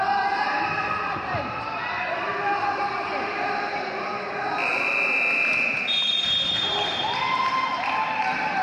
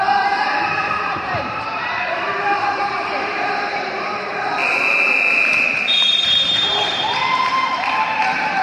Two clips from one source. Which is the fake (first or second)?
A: second